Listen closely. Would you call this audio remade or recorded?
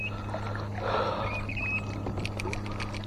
recorded